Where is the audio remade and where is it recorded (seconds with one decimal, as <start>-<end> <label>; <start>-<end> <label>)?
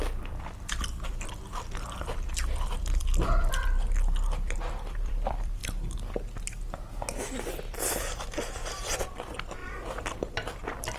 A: 0.0-5.6 remade; 5.6-7.9 recorded; 7.9-11.0 remade